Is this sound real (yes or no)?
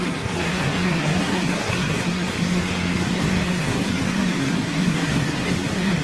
no